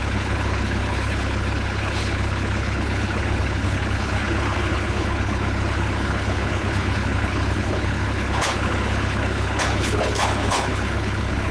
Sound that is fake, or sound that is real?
fake